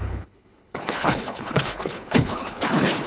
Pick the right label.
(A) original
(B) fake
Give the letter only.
B